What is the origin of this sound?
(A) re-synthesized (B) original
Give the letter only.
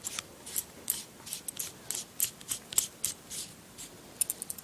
B